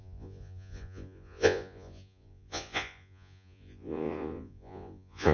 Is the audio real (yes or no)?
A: no